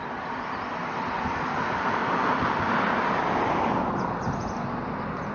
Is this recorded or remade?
recorded